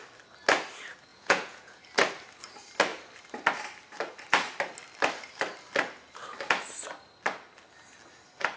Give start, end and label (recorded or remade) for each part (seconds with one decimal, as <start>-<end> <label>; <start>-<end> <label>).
0.0-1.1 recorded; 1.1-1.8 remade; 1.8-8.6 recorded